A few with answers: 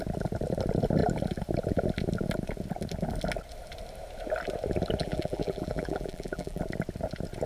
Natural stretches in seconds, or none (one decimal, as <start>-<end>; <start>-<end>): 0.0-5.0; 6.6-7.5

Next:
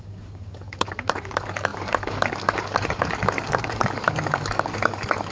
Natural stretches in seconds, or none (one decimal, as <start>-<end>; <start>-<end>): none

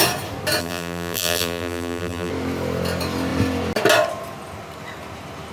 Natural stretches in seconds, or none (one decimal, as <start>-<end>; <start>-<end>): 0.0-0.6; 2.3-5.5

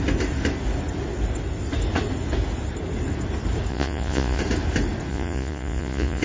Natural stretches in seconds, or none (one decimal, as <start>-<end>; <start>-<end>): 0.0-3.7; 4.4-5.1

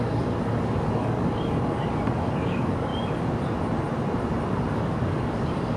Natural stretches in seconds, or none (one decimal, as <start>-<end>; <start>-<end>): 2.9-4.5